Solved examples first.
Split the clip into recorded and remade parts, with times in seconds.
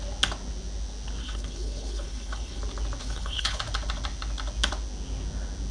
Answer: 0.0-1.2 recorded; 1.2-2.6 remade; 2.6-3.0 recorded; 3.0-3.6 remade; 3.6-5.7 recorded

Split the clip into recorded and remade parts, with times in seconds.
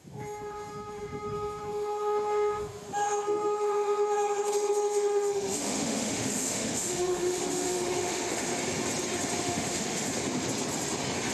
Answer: 0.0-8.5 remade; 8.5-9.4 recorded; 9.4-10.1 remade; 10.1-11.3 recorded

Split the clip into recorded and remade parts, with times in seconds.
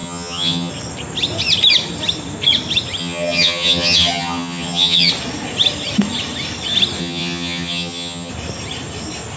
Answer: 0.0-0.7 remade; 0.7-3.0 recorded; 3.0-5.1 remade; 5.1-7.0 recorded; 7.0-8.3 remade; 8.3-9.4 recorded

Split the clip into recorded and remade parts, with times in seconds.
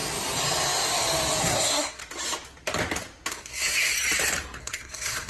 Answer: 0.0-1.4 recorded; 1.4-2.0 remade; 2.0-3.3 recorded; 3.3-3.9 remade; 3.9-4.6 recorded; 4.6-5.3 remade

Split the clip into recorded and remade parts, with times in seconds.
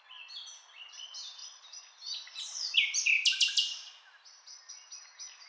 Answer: 0.0-5.5 recorded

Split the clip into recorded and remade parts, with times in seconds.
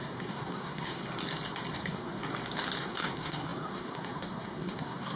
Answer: 0.0-1.0 remade; 1.0-1.7 recorded; 1.7-2.2 remade; 2.2-2.8 recorded; 2.8-5.2 remade